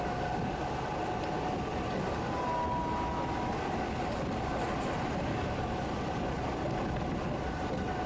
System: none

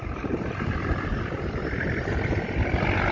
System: none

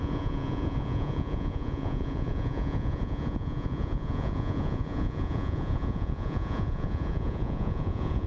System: vocoder, Vocos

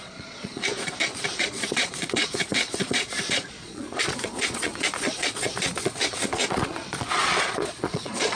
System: vocoder, Vocos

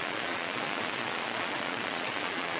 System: vocoder, Vocos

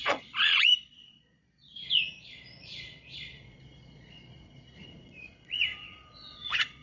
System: vocoder, Vocos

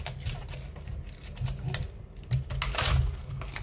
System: none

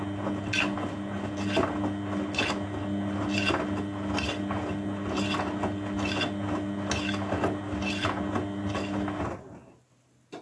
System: none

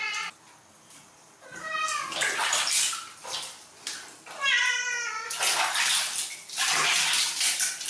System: none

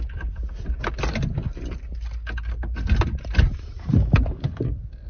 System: none